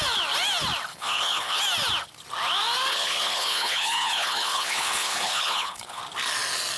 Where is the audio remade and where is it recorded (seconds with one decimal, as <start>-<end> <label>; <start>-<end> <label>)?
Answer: 0.0-0.9 recorded; 0.9-1.6 remade; 1.6-2.9 recorded; 2.9-6.0 remade; 6.0-6.8 recorded